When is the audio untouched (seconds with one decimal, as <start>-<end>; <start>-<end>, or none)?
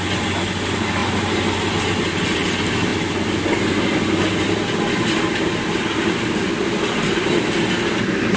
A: 0.0-8.4